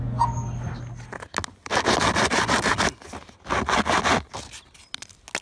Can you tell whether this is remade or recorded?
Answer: recorded